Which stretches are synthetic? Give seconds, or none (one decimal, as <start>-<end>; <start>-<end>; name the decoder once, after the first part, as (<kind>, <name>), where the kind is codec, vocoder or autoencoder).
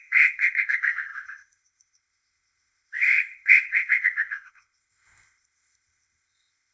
0.0-6.7 (codec, ZipCodec)